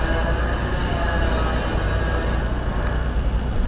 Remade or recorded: recorded